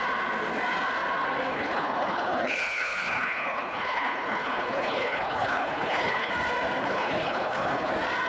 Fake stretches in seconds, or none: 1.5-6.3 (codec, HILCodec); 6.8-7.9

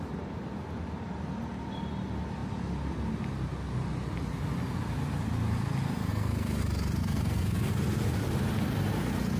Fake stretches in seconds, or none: 6.1-6.6 (codec, SNAC); 7.0-7.7